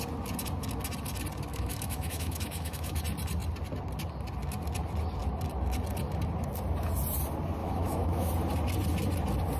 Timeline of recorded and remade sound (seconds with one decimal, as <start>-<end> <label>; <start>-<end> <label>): 0.0-1.5 recorded; 1.5-3.0 remade; 3.0-7.6 recorded; 7.6-8.3 remade; 8.3-9.6 recorded